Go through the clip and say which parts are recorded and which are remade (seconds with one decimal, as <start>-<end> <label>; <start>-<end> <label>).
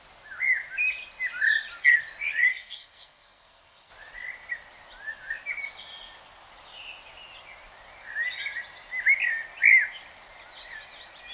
0.0-2.5 recorded; 2.5-3.9 remade; 3.9-11.3 recorded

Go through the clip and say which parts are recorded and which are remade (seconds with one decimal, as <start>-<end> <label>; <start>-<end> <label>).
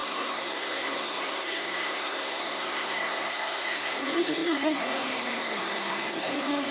0.0-6.7 remade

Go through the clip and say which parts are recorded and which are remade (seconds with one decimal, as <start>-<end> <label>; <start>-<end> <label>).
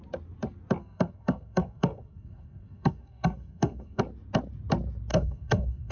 0.0-0.8 recorded; 0.8-4.0 remade; 4.0-5.1 recorded; 5.1-5.9 remade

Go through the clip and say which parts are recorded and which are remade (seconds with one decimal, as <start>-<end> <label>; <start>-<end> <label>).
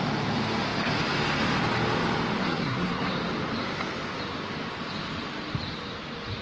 0.0-2.4 recorded; 2.4-3.1 remade; 3.1-6.4 recorded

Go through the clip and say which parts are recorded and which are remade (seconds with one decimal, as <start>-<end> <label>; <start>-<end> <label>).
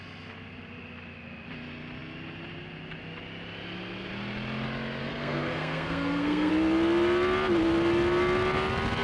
0.0-5.0 recorded; 5.0-6.5 remade; 6.5-9.0 recorded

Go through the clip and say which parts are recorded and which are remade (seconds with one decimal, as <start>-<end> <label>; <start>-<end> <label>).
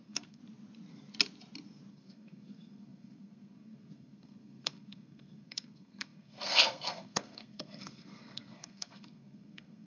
0.0-0.4 remade; 0.4-1.9 recorded; 1.9-9.9 remade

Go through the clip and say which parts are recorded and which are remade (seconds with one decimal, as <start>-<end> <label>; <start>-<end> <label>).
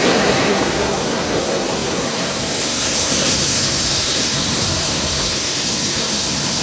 0.0-6.6 remade